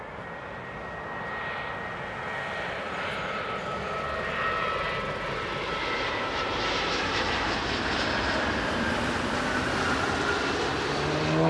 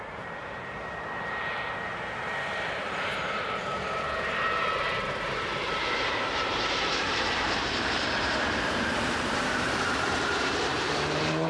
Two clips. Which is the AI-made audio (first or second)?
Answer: second